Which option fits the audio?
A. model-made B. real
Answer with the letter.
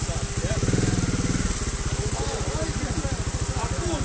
B